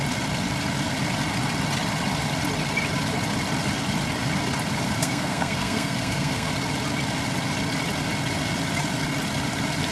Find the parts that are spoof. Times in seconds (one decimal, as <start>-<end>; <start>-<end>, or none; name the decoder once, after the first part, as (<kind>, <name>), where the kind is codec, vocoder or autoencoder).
5.0-6.5 (codec, SNAC)